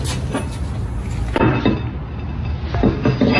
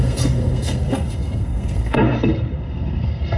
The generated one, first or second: second